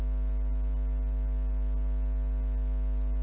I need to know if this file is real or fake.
real